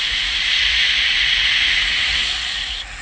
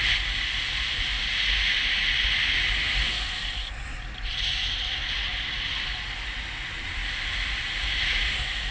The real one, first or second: second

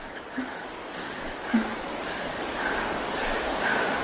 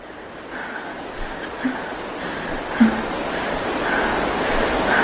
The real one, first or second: second